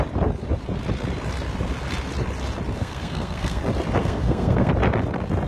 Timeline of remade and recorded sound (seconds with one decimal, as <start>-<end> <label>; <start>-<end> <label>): 0.0-2.8 recorded; 2.8-3.6 remade; 3.6-4.0 recorded; 4.0-4.7 remade; 4.7-5.5 recorded